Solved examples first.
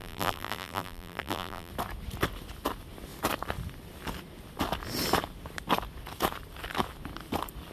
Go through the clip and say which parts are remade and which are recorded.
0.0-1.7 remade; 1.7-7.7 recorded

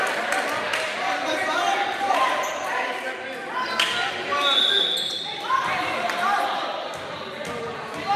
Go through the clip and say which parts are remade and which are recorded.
0.0-0.9 recorded; 0.9-2.7 remade; 2.7-8.2 recorded

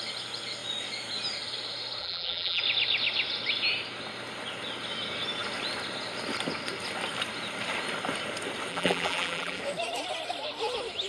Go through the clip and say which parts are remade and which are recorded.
0.0-2.0 recorded; 2.0-2.6 remade; 2.6-8.7 recorded; 8.7-9.6 remade; 9.6-11.1 recorded

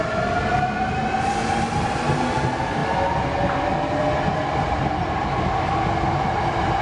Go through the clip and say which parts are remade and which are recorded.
0.0-4.4 recorded; 4.4-5.3 remade; 5.3-6.8 recorded

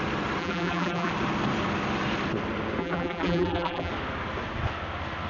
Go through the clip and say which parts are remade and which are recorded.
0.0-0.4 recorded; 0.4-1.1 remade; 1.1-2.8 recorded; 2.8-3.9 remade; 3.9-5.3 recorded